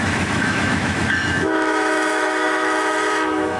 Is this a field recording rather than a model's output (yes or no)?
no